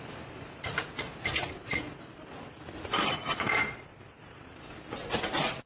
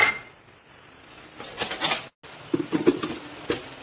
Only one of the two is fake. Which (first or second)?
first